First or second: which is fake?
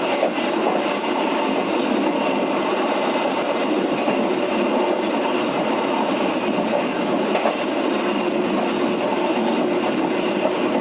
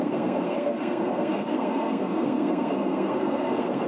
second